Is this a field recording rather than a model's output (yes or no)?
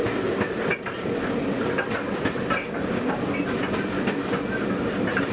yes